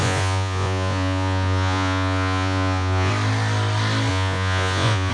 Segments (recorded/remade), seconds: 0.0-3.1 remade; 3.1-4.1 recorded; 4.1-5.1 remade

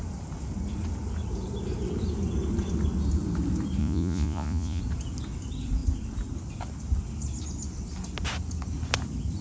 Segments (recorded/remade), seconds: 0.0-3.8 recorded; 3.8-4.8 remade; 4.8-9.4 recorded

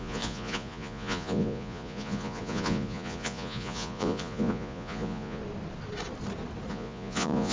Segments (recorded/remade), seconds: 0.0-5.4 remade; 5.4-6.7 recorded; 6.7-7.5 remade

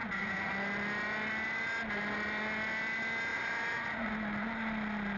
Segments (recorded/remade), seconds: 0.0-0.5 remade; 0.5-3.3 recorded; 3.3-4.1 remade; 4.1-5.2 recorded

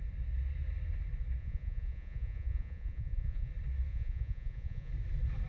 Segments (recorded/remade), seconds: 0.0-1.4 recorded; 1.4-3.5 remade; 3.5-3.9 recorded; 3.9-4.9 remade; 4.9-5.5 recorded

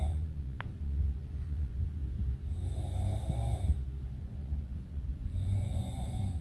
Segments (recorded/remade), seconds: 0.0-2.0 remade; 2.0-4.2 recorded; 4.2-6.4 remade

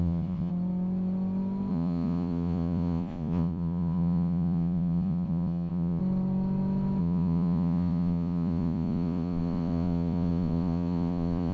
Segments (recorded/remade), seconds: 0.0-0.5 remade; 0.5-1.7 recorded; 1.7-6.0 remade; 6.0-7.0 recorded; 7.0-11.5 remade

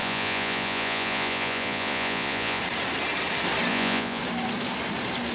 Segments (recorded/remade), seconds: 0.0-2.6 remade; 2.6-3.7 recorded; 3.7-4.2 remade; 4.2-5.3 recorded